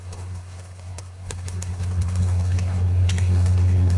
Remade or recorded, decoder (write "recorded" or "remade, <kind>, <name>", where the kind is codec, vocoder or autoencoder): remade, codec, SNAC